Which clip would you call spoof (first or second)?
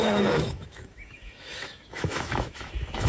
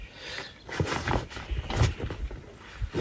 first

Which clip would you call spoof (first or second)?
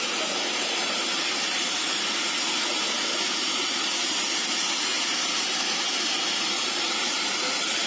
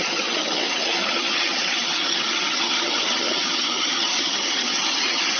second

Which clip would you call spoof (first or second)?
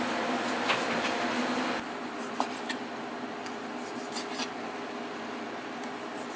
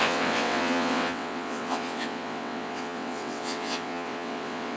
second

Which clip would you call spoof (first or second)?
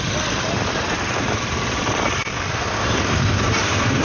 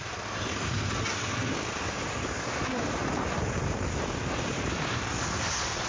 first